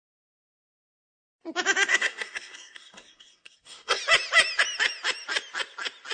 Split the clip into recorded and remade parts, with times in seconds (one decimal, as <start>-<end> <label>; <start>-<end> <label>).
0.0-1.9 recorded; 1.9-4.0 remade; 4.0-6.1 recorded